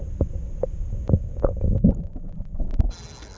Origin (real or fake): real